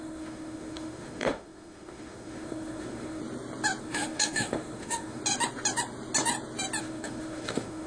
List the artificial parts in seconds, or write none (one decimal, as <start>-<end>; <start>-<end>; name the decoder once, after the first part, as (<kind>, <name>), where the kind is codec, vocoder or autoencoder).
0.0-3.2 (autoencoder, DAC-VAE); 3.8-5.2; 6.8-7.9